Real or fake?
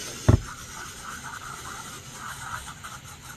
real